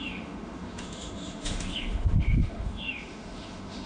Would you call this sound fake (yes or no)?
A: yes